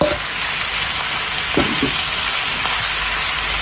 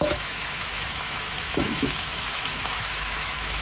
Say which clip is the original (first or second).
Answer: first